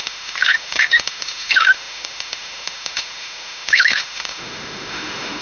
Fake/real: fake